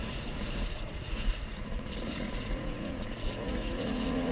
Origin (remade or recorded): remade